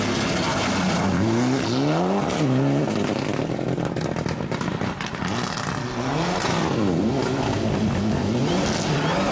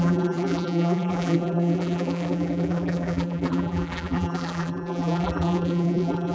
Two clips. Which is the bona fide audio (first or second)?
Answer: first